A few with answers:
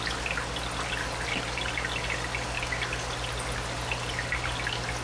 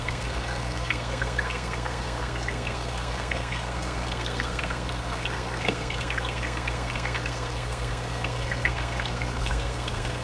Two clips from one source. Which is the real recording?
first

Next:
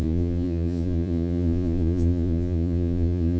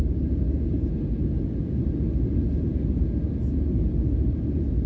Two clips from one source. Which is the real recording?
second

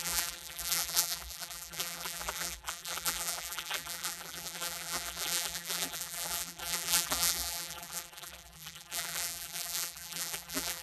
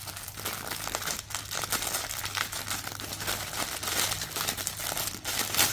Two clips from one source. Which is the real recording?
second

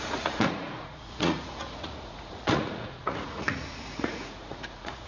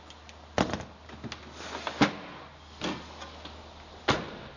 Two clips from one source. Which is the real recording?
second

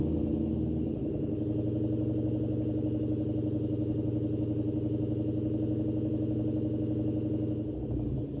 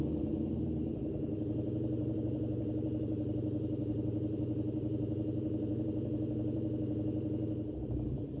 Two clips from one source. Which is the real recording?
first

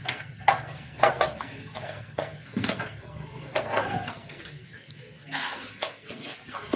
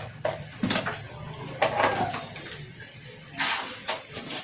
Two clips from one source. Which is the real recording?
second